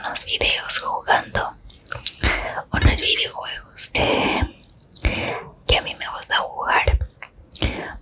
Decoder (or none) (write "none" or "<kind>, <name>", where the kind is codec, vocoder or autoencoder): none